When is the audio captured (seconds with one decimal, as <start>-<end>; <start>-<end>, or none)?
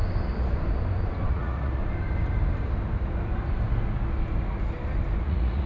0.0-1.3; 1.8-5.2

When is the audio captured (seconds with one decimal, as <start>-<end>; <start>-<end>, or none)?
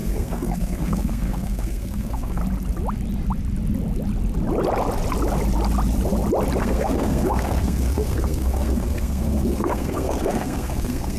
2.4-6.6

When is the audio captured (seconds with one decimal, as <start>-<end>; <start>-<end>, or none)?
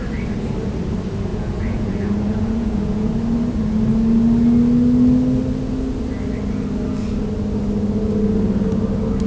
0.0-1.3; 3.1-9.3